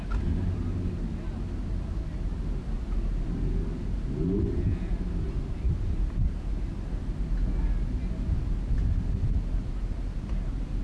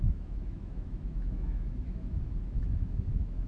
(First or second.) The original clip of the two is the first